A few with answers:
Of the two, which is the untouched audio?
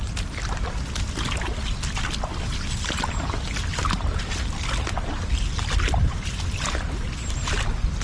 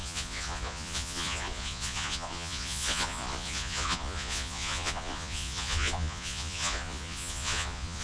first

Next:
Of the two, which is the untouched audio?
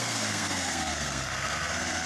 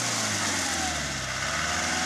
second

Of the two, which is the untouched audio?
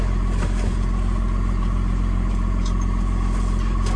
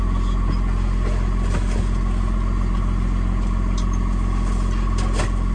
second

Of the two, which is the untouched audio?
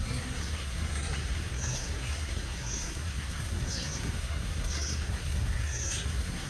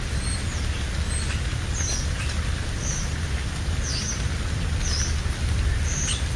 second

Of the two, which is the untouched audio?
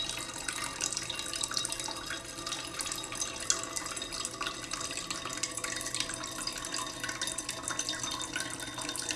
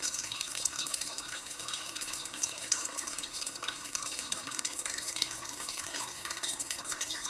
first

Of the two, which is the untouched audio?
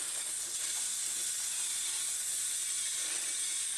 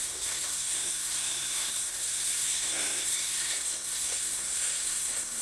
first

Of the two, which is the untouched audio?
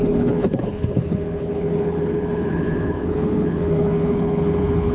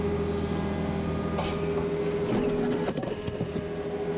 second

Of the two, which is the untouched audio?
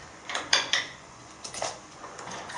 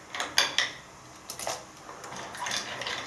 second